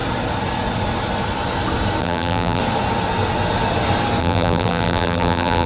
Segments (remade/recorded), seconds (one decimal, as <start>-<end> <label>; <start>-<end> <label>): 0.0-2.0 recorded; 2.0-2.6 remade; 2.6-4.2 recorded; 4.2-5.7 remade

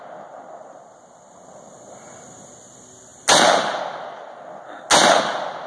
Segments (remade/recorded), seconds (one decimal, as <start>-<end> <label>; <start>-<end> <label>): 0.0-5.7 recorded

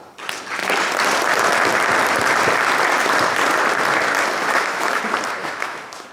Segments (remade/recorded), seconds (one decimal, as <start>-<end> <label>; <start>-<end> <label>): 0.0-4.4 recorded; 4.4-5.0 remade; 5.0-5.4 recorded; 5.4-6.1 remade

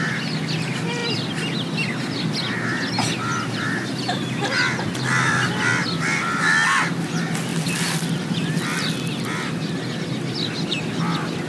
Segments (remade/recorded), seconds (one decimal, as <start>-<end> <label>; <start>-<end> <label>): 0.0-11.5 recorded